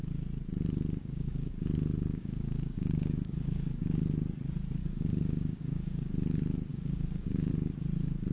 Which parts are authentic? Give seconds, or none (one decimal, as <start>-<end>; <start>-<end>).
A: 0.0-1.0; 4.0-4.8; 6.1-6.7; 7.5-8.3